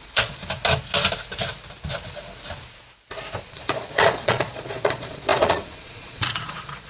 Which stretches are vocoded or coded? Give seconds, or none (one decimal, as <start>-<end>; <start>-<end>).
0.0-0.4; 3.5-6.9